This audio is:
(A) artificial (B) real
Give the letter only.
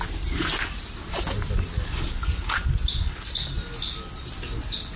B